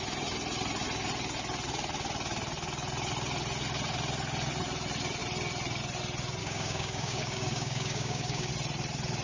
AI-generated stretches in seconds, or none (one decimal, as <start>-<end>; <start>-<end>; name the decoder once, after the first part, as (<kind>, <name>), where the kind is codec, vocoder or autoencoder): 6.4-8.5 (codec, DAC)